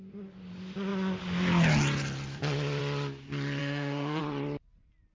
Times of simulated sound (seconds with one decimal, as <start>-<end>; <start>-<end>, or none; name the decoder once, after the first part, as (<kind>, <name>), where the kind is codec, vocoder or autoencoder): 3.6-4.2 (autoencoder, DAC-VAE)